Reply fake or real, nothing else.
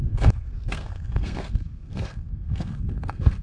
fake